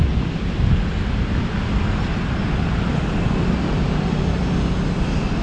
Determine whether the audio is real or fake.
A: real